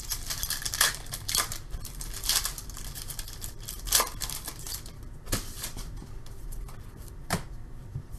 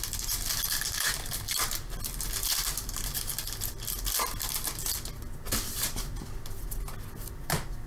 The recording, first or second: second